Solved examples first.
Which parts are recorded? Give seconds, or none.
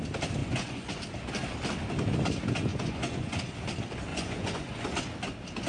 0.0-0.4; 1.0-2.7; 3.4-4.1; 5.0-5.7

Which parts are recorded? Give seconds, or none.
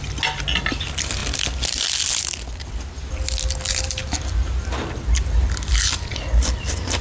0.0-7.0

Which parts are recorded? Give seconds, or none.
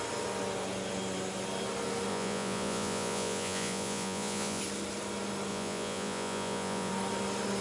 0.0-2.1; 4.6-5.5; 6.9-7.6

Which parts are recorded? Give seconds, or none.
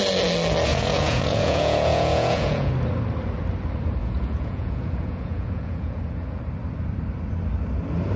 0.0-0.7; 2.7-4.0; 6.4-8.2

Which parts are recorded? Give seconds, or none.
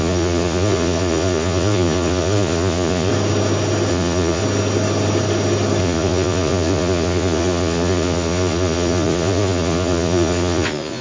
3.1-3.9; 4.4-5.8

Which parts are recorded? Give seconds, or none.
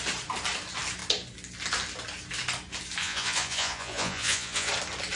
0.0-3.0; 4.7-5.2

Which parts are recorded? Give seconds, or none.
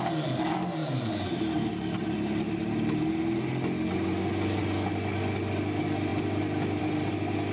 0.0-7.5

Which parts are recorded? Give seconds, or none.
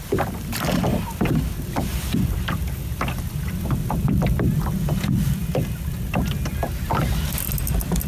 0.0-8.1